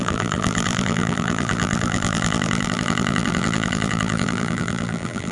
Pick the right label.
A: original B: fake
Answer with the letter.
B